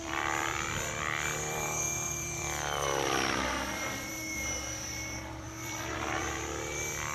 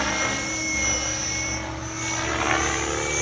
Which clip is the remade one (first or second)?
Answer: first